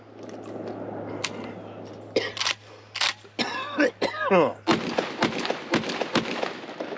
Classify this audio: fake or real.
real